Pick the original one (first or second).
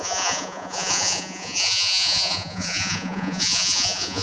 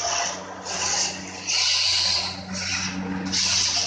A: second